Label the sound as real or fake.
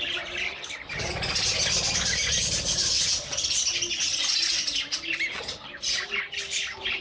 real